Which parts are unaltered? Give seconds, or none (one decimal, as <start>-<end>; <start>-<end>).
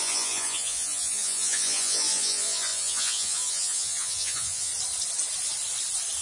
4.7-6.2